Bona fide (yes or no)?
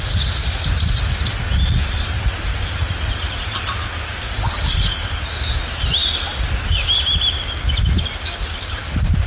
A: yes